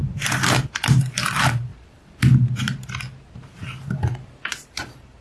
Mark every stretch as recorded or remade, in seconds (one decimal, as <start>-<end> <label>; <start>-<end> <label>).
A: 0.0-1.0 recorded; 1.0-5.2 remade